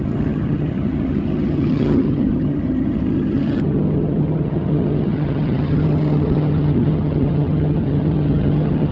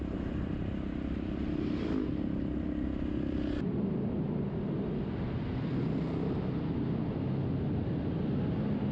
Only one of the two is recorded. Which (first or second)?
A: second